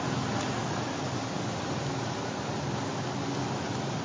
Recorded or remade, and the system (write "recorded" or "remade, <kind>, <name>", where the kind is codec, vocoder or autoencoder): recorded